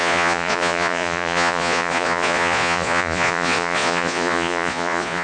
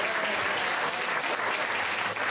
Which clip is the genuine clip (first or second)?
second